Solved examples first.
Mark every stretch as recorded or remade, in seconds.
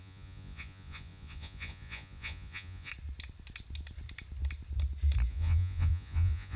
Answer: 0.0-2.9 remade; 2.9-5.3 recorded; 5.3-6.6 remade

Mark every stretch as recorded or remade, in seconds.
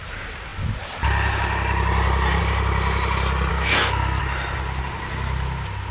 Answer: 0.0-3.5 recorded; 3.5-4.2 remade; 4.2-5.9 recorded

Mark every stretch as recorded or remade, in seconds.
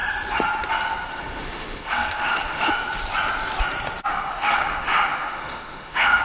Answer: 0.0-1.1 recorded; 1.1-2.7 remade; 2.7-4.1 recorded; 4.1-6.2 remade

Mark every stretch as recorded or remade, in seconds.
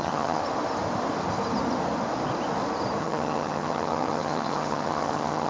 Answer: 0.0-0.4 remade; 0.4-3.0 recorded; 3.0-5.5 remade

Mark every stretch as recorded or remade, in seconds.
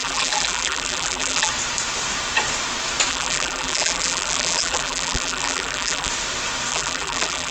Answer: 0.0-1.5 remade; 1.5-3.1 recorded; 3.1-6.1 remade; 6.1-6.7 recorded; 6.7-7.5 remade